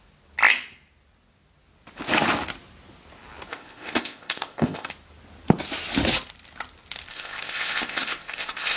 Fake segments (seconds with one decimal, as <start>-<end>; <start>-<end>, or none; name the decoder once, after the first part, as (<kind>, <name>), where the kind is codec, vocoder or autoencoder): 3.5-4.9 (codec, ZipCodec); 7.1-8.8